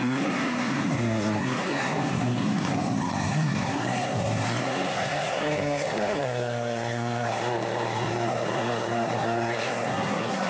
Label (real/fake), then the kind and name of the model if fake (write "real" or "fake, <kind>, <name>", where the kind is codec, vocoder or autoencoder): fake, codec, SNAC